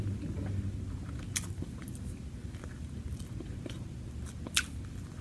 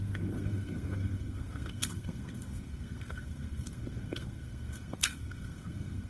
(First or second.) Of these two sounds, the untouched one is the first